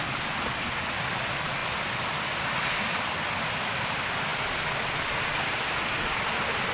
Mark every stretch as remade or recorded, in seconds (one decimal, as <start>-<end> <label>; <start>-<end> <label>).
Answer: 0.0-6.7 recorded